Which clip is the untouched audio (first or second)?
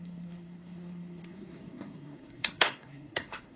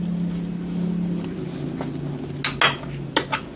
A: second